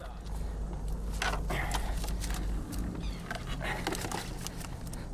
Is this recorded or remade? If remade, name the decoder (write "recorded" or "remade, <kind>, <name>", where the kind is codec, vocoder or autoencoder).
recorded